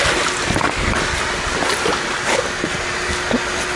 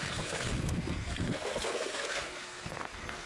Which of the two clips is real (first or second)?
first